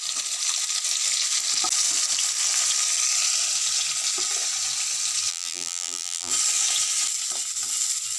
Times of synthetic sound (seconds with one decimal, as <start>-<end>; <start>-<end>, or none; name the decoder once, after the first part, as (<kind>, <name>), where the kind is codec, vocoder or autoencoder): 5.3-6.3 (vocoder, BigVGAN v2)